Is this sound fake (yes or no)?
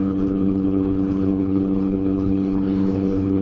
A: yes